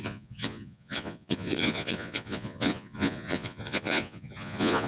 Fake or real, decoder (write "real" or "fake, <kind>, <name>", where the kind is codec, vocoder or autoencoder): fake, vocoder, Vocos